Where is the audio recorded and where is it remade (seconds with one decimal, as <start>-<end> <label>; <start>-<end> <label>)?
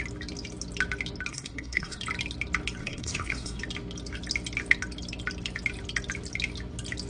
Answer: 0.0-1.3 recorded; 1.3-2.0 remade; 2.0-2.8 recorded; 2.8-3.6 remade; 3.6-7.1 recorded